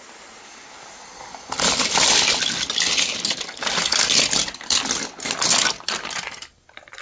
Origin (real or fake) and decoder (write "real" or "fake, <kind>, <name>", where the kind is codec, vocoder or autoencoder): real